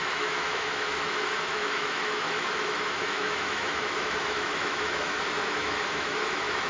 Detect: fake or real fake